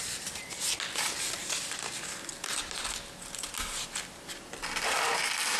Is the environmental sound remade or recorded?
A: recorded